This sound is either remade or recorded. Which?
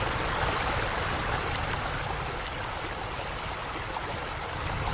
recorded